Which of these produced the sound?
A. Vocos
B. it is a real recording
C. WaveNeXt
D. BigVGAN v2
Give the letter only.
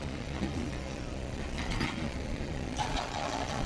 A